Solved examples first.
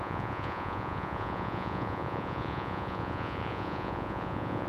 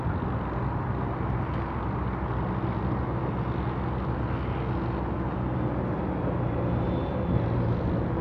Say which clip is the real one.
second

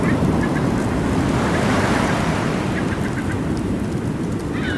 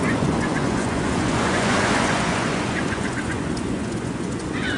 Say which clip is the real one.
first